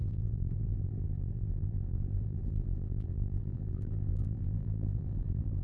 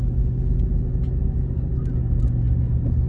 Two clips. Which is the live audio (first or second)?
second